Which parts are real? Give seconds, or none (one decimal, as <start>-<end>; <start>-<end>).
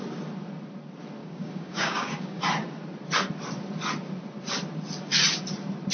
0.0-1.2; 2.4-5.9